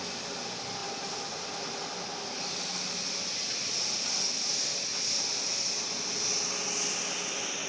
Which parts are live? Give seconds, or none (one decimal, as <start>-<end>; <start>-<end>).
0.0-7.7